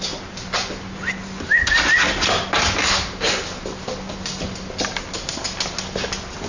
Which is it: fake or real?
real